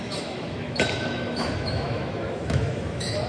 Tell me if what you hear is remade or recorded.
remade